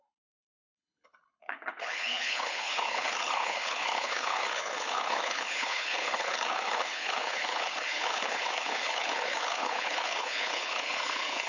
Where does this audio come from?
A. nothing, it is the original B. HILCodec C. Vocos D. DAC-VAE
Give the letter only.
B